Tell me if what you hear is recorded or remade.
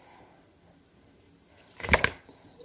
remade